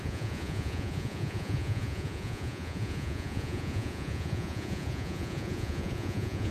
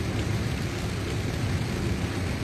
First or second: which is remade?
first